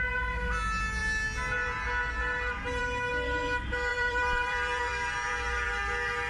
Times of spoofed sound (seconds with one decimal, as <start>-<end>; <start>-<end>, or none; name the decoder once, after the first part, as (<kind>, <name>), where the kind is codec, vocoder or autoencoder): 3.9-5.7 (vocoder, BigVGAN v2)